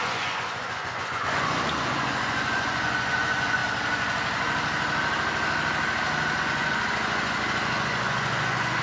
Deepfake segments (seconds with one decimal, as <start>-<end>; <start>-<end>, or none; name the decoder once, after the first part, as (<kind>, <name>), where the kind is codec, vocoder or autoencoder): 0.0-3.6 (vocoder, Vocos); 6.4-8.8